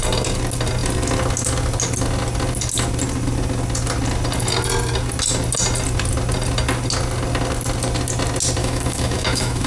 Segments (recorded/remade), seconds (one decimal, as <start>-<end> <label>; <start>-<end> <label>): 0.0-8.6 recorded; 8.6-9.7 remade